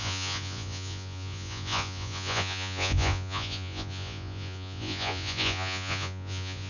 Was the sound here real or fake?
fake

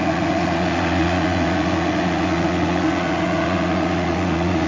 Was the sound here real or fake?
fake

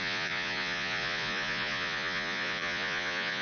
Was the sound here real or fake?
fake